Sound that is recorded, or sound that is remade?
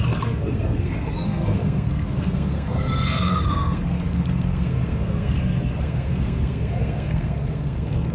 remade